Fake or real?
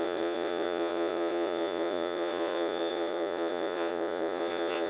fake